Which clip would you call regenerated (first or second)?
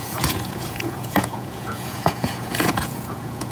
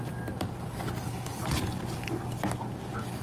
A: first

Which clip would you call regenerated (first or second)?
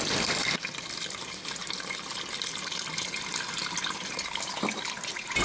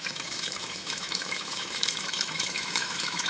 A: second